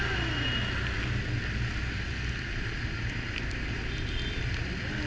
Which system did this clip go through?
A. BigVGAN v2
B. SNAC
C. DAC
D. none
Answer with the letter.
D